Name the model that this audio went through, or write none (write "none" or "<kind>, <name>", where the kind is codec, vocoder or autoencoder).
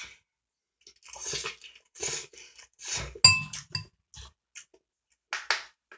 none